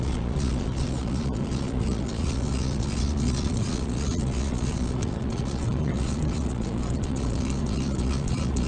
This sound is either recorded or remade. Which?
remade